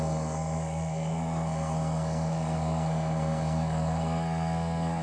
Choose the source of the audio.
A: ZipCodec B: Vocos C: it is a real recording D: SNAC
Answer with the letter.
D